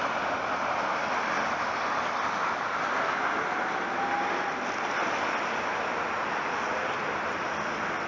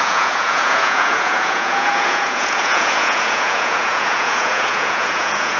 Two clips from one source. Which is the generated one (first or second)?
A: second